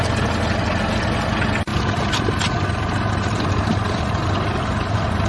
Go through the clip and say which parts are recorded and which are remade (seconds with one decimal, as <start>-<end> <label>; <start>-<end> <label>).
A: 0.0-5.3 recorded